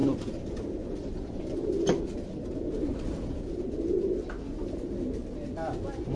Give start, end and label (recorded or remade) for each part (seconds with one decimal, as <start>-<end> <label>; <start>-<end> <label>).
0.0-1.4 remade; 1.4-2.9 recorded; 2.9-4.2 remade; 4.2-6.2 recorded